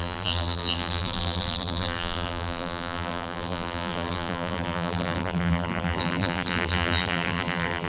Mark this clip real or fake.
fake